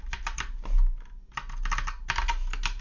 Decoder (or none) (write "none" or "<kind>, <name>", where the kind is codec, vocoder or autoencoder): none